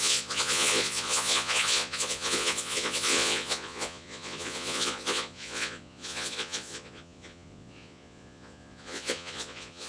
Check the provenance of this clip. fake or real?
fake